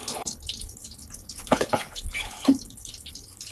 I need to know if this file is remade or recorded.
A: remade